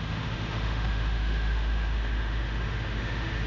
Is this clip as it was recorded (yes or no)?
no